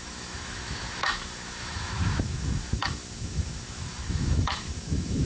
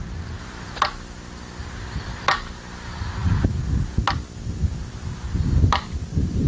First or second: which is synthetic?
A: first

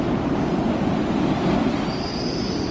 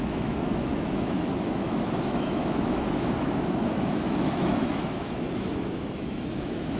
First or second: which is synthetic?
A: second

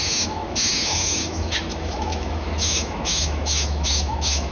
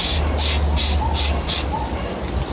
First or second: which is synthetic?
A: first